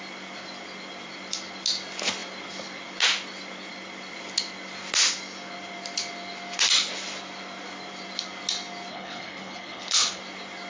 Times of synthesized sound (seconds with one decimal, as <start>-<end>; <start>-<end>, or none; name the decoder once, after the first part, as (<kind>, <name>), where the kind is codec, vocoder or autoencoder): 8.9-10.2 (codec, HILCodec)